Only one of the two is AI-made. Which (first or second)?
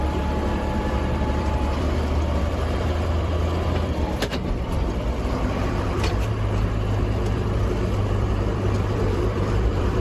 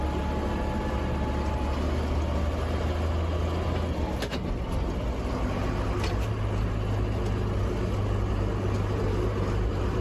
first